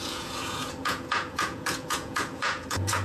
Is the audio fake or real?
fake